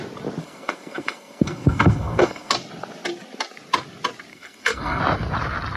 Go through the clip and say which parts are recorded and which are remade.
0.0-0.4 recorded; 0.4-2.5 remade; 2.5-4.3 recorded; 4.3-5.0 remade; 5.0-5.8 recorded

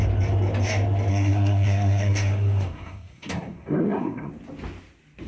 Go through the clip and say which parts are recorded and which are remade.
0.0-1.1 recorded; 1.1-4.3 remade; 4.3-5.3 recorded

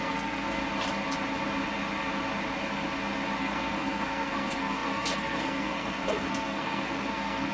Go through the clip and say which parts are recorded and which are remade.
0.0-0.6 remade; 0.6-3.4 recorded; 3.4-7.5 remade

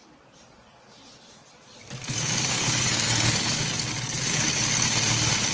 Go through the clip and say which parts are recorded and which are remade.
0.0-1.8 recorded; 1.8-4.9 remade; 4.9-5.5 recorded

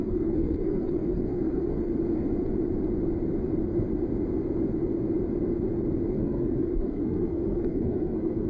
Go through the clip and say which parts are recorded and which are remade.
0.0-1.9 remade; 1.9-6.1 recorded; 6.1-8.5 remade

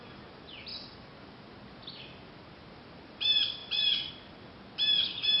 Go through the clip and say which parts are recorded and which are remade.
0.0-5.4 recorded